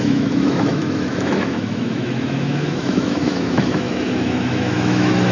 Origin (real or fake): fake